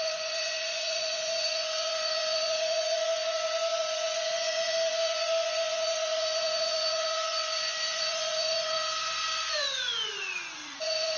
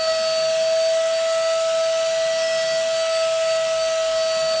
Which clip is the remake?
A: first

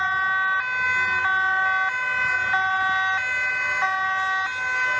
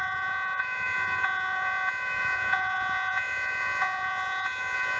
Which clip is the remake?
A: second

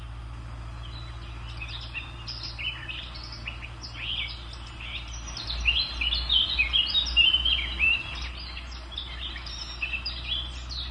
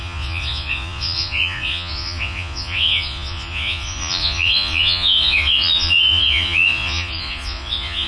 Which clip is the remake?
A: second